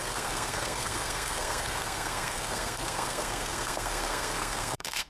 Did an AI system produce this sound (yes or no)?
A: yes